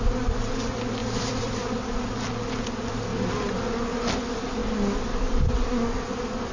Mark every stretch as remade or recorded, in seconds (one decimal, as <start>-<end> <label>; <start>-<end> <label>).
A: 0.0-1.0 recorded; 1.0-2.0 remade; 2.0-4.6 recorded; 4.6-5.7 remade; 5.7-6.5 recorded

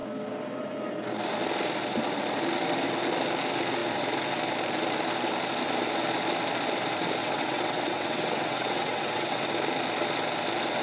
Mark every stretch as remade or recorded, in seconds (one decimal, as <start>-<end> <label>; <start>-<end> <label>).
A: 0.0-7.2 recorded; 7.2-9.5 remade; 9.5-10.8 recorded